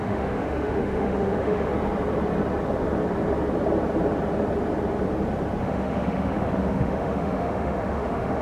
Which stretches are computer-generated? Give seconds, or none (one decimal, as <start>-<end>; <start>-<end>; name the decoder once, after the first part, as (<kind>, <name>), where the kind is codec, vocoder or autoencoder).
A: 0.0-1.7 (autoencoder, DAC-VAE); 5.6-8.4